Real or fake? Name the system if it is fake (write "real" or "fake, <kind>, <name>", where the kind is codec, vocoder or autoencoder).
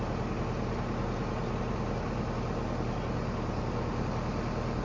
real